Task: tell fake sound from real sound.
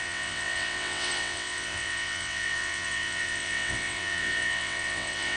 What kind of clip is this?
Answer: fake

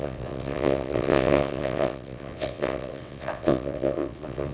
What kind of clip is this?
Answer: fake